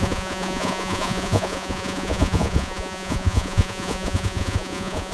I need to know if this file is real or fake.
fake